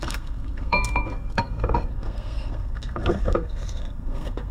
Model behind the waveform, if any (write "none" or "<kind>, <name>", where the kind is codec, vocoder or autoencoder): codec, SNAC